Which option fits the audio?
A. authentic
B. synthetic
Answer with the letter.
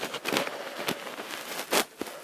A